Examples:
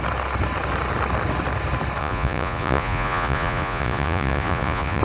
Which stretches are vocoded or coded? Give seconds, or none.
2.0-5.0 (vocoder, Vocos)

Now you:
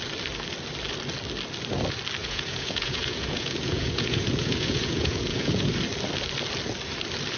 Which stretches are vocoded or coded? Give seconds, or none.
2.2-5.7 (vocoder, Vocos)

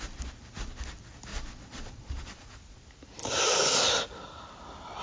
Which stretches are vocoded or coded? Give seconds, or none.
1.3-2.8 (vocoder, Vocos)

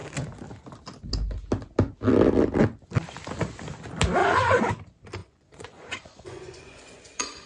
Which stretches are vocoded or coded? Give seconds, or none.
4.2-4.7 (vocoder, Vocos); 5.2-7.5